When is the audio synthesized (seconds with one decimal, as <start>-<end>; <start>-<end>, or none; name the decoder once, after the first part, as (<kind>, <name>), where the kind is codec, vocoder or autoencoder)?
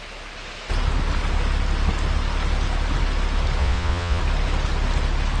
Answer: 3.6-4.2 (vocoder, Vocos)